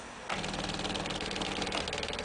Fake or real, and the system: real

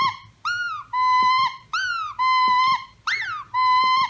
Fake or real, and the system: real